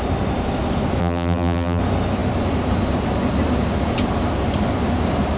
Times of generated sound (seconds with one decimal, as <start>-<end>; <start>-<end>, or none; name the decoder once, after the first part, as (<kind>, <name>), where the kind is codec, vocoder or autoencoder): 1.0-1.8 (vocoder, BigVGAN v2)